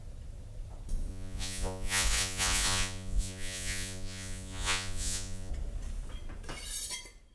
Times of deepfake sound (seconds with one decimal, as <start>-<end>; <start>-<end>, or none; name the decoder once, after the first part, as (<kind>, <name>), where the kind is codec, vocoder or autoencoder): 1.1-5.5 (vocoder, Vocos)